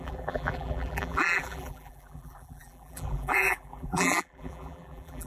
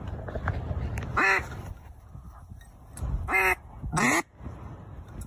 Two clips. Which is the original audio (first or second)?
second